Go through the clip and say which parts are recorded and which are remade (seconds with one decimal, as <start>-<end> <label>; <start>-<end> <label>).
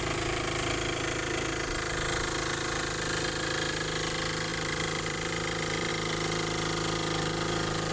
0.0-4.5 recorded; 4.5-5.9 remade; 5.9-7.9 recorded